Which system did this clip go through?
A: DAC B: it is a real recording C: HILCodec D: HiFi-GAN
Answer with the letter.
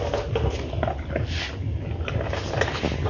B